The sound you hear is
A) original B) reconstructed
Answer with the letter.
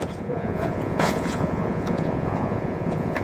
B